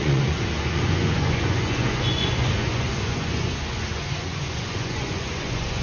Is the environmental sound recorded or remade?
remade